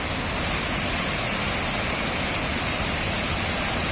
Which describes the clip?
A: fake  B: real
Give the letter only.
B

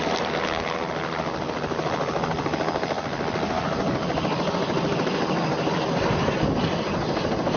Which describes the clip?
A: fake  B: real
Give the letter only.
B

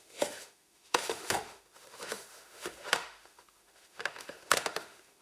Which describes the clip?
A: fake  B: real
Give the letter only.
A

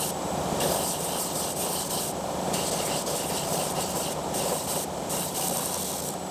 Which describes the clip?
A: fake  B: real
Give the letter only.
B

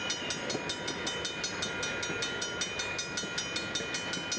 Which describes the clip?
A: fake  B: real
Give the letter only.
B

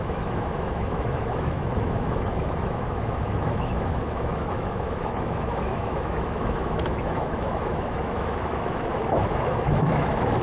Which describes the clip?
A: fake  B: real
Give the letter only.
A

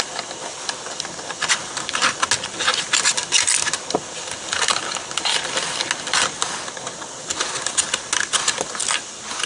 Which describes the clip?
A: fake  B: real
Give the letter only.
B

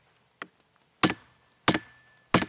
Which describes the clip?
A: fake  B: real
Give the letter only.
B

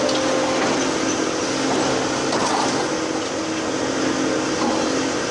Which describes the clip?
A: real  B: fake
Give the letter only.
A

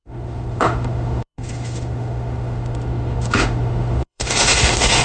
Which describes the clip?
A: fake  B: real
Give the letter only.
A